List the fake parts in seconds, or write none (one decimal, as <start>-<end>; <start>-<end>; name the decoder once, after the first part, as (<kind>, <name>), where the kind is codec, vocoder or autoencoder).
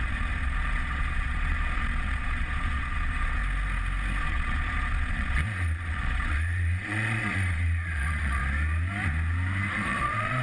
0.0-3.4 (vocoder, Vocos); 4.2-8.4; 9.7-10.4